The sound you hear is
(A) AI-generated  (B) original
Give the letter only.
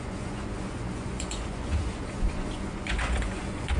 A